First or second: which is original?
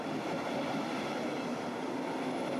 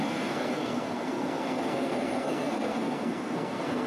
first